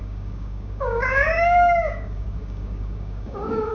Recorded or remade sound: remade